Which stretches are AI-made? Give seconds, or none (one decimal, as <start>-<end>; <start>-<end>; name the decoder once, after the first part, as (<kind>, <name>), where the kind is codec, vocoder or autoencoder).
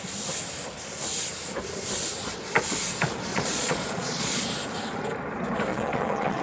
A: 3.3-4.4 (vocoder, Vocos); 5.7-6.4